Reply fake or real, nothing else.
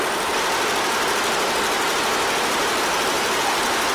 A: real